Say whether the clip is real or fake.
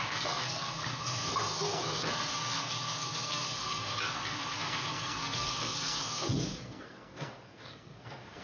fake